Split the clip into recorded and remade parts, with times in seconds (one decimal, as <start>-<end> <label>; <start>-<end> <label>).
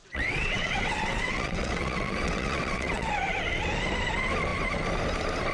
0.0-3.1 remade; 3.1-5.5 recorded